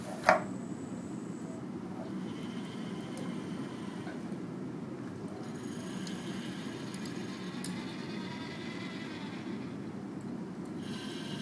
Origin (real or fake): real